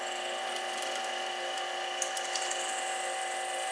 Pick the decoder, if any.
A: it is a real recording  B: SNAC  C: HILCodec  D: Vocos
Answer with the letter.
A